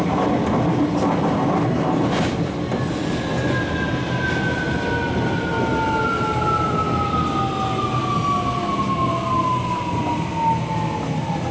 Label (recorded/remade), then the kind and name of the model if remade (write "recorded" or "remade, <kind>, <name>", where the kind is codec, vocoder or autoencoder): recorded